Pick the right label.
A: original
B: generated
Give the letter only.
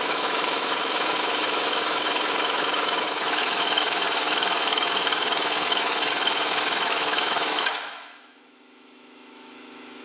B